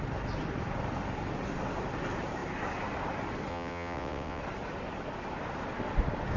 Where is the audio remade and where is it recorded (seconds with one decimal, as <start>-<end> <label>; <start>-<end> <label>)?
0.0-3.5 recorded; 3.5-4.4 remade; 4.4-6.4 recorded